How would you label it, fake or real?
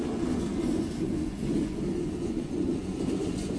fake